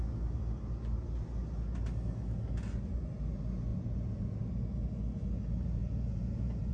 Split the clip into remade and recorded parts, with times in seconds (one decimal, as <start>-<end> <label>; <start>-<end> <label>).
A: 0.0-3.7 recorded; 3.7-4.4 remade; 4.4-5.8 recorded; 5.8-6.7 remade